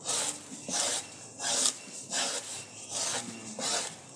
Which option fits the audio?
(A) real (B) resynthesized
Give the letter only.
A